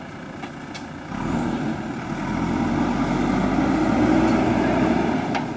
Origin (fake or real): real